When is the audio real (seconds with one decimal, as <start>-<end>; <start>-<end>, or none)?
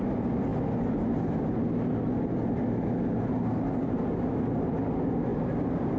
0.0-6.0